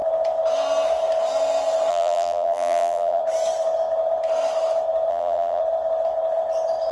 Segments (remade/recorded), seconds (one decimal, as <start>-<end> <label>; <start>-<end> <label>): 0.0-1.9 recorded; 1.9-3.2 remade; 3.2-5.1 recorded; 5.1-5.6 remade; 5.6-6.9 recorded